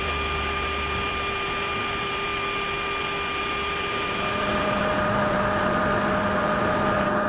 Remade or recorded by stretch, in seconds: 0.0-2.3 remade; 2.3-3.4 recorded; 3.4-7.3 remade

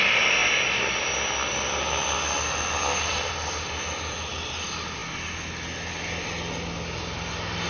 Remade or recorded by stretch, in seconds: 0.0-7.7 recorded

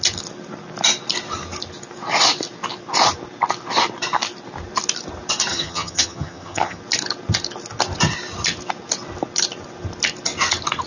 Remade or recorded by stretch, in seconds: 0.0-5.5 recorded; 5.5-6.8 remade; 6.8-10.9 recorded

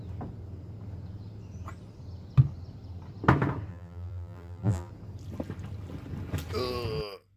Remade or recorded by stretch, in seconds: 0.0-3.7 recorded; 3.7-4.9 remade; 4.9-7.4 recorded